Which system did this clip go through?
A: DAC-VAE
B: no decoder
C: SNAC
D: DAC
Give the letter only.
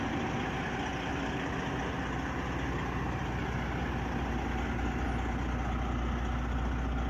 B